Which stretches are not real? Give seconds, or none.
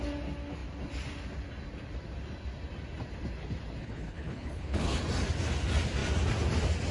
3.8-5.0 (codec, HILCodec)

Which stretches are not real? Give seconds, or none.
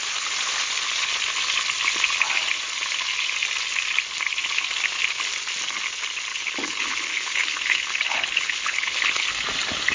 6.3-9.3 (codec, HILCodec)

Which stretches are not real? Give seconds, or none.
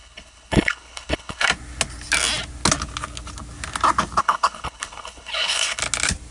0.0-1.5 (codec, HILCodec); 4.2-5.8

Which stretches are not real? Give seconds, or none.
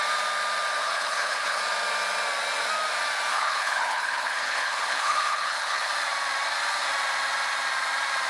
0.8-1.6 (codec, HILCodec); 3.3-5.9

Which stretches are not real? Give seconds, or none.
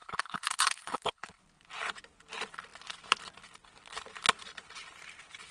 0.0-1.4 (codec, HILCodec)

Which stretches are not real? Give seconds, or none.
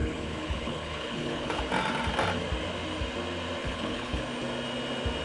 0.0-1.6 (codec, HILCodec); 3.6-4.2